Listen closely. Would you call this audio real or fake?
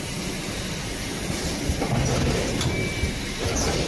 real